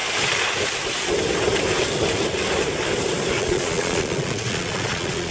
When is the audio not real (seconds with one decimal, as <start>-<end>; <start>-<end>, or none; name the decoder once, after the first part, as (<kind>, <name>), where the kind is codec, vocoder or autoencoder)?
3.4-5.3 (vocoder, Vocos)